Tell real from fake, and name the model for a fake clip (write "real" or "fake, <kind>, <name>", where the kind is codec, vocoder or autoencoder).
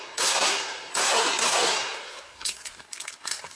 fake, codec, SNAC